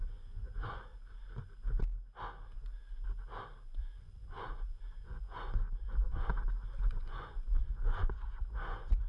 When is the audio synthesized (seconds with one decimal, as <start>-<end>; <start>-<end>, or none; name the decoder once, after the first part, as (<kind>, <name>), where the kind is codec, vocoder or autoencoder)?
0.0-0.9 (vocoder, Vocos); 3.8-6.3; 6.9-9.1